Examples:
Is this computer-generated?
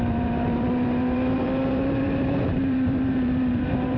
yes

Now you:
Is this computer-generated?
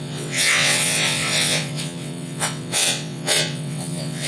yes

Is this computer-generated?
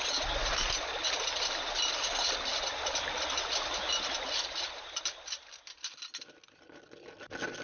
no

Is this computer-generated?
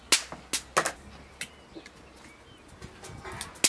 no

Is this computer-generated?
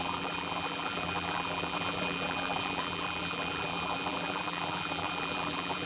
yes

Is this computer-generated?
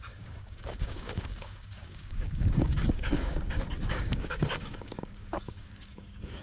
yes